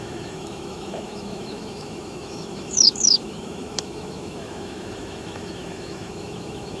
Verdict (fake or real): fake